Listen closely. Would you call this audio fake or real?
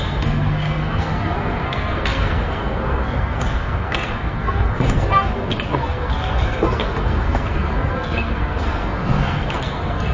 fake